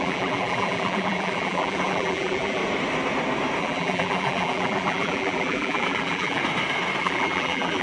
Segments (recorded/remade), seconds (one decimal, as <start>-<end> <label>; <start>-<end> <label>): 0.0-2.6 remade; 2.6-3.6 recorded; 3.6-6.4 remade; 6.4-7.0 recorded; 7.0-7.8 remade